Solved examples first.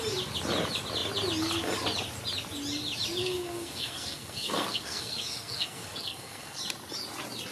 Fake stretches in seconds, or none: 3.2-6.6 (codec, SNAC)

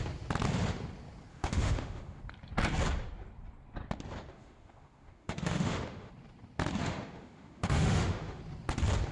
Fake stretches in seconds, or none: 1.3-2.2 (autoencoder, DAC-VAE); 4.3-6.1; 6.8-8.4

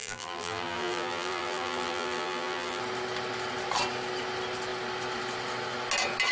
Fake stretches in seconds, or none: 0.0-2.8 (vocoder, BigVGAN v2)

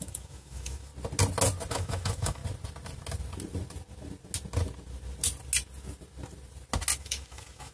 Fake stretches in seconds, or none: 0.0-0.9 (autoencoder, DAC-VAE); 1.7-2.4; 7.0-7.7

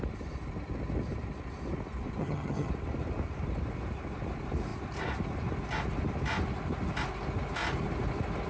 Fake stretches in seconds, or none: 2.2-2.7 (vocoder, HiFi-GAN)

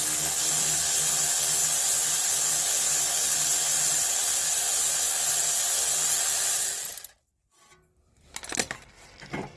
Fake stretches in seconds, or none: none

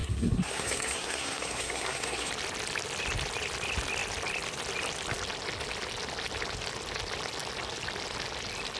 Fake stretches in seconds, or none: 0.0-2.3 (codec, SNAC)